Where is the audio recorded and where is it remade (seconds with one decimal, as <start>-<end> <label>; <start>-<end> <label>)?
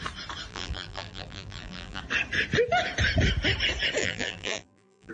0.0-0.5 recorded; 0.5-2.0 remade; 2.0-4.0 recorded; 4.0-5.1 remade